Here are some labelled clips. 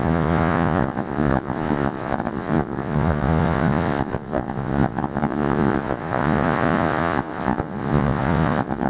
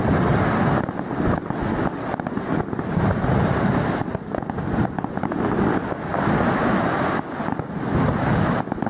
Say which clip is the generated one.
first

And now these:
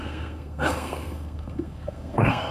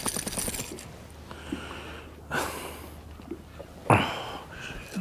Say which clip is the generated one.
first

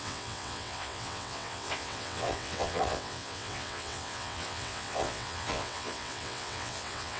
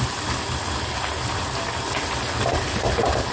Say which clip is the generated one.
first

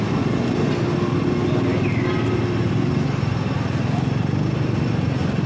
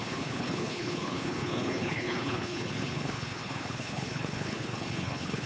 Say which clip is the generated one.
second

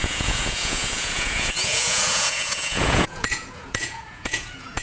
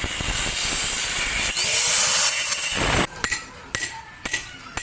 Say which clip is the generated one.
first